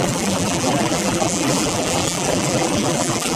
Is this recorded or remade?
remade